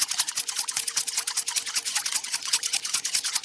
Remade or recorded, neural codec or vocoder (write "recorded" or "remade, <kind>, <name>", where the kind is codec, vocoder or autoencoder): remade, vocoder, Vocos